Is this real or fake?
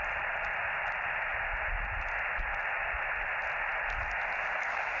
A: real